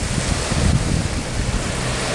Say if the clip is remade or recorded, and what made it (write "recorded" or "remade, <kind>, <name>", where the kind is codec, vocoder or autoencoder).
recorded